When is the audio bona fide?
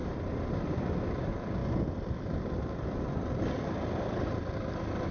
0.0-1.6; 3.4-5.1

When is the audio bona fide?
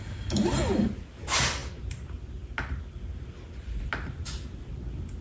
0.0-5.2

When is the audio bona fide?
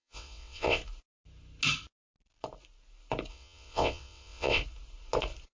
0.8-3.3; 4.6-5.6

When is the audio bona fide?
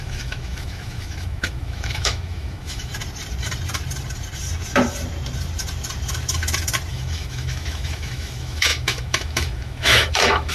2.9-6.9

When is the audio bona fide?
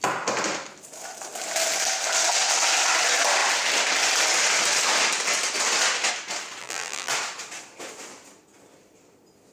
0.0-6.6; 7.1-9.5